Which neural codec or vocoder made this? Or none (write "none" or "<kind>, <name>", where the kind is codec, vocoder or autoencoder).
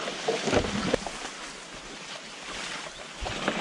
none